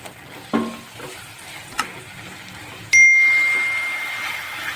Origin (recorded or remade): recorded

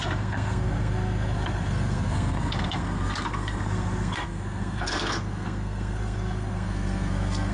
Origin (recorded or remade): remade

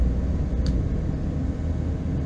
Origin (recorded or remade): recorded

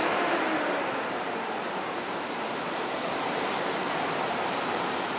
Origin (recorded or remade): remade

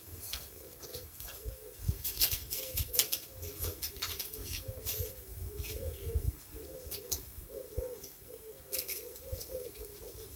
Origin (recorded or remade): remade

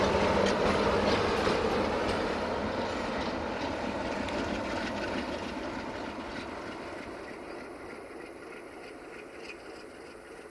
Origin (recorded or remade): recorded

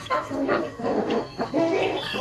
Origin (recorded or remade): remade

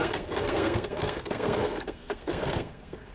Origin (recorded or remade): remade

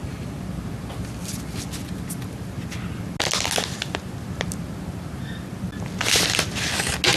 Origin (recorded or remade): recorded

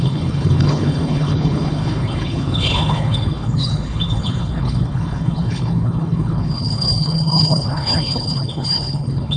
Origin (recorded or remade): remade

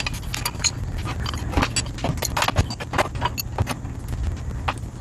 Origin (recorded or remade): recorded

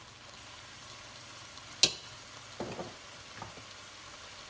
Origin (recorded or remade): recorded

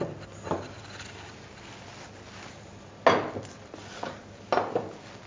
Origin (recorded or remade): recorded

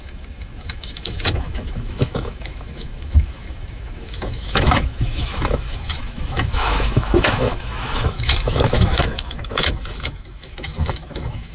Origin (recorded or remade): remade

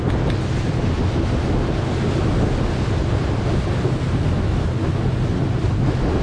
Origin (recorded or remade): recorded